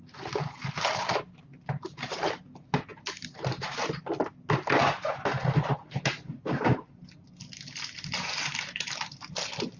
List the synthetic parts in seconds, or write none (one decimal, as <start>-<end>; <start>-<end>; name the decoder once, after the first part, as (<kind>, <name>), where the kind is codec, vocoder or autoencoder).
none